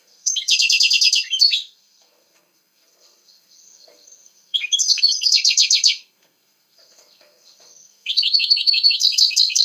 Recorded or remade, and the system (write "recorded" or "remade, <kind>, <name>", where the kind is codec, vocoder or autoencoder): remade, codec, SNAC